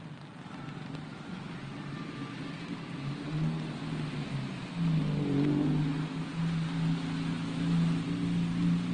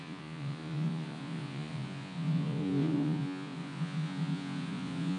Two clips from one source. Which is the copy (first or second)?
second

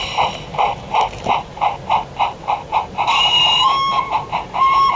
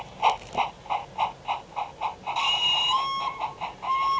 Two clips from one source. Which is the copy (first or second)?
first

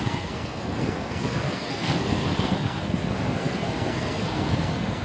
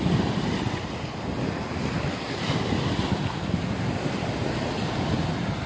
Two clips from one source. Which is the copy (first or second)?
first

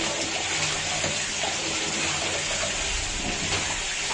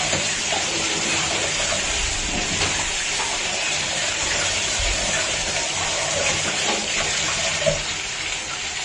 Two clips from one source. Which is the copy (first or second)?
second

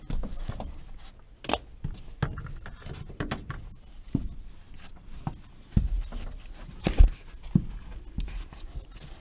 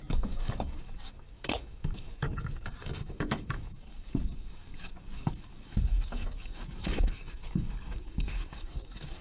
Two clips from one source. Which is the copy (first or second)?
second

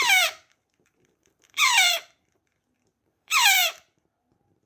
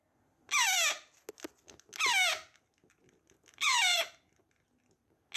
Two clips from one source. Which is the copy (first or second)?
first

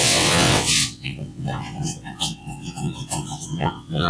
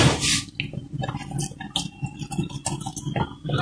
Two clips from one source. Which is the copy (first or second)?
first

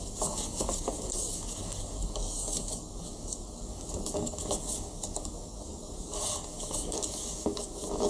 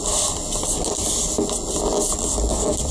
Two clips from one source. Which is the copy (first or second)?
first